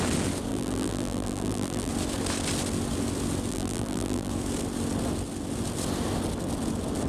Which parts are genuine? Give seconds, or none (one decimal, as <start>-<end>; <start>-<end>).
0.0-0.5; 1.9-3.5; 4.3-7.1